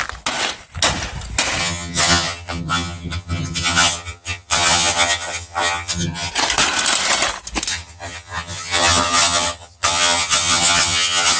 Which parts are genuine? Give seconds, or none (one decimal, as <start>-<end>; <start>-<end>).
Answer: 0.0-1.6; 6.3-7.7